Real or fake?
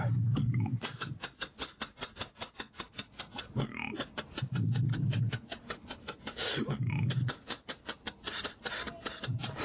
real